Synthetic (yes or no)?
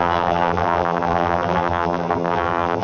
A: yes